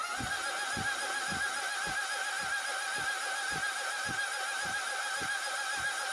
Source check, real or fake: real